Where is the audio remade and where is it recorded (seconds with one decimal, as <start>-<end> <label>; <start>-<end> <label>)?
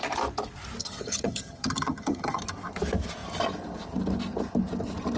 0.0-0.8 recorded; 0.8-2.4 remade; 2.4-5.2 recorded